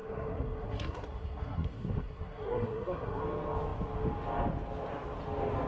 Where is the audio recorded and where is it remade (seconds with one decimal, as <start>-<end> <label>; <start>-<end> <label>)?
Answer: 0.0-3.2 remade; 3.2-5.7 recorded